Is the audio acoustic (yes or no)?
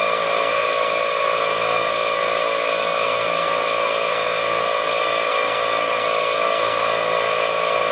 no